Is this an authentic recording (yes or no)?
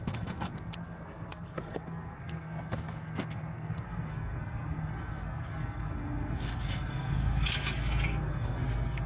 no